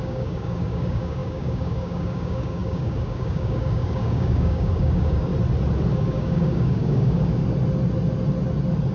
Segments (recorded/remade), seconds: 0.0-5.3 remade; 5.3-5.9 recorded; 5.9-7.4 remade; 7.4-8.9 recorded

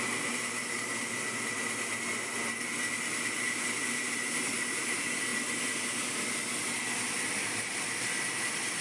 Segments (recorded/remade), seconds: 0.0-8.8 recorded

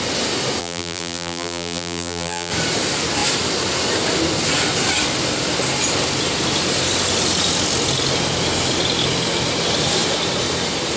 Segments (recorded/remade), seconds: 0.0-0.6 recorded; 0.6-2.5 remade; 2.5-11.0 recorded